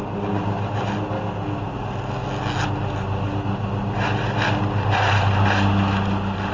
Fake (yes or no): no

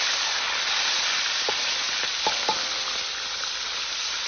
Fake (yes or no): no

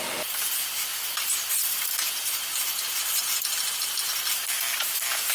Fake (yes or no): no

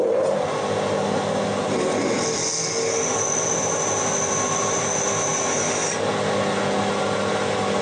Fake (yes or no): no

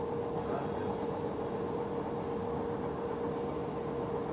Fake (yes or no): no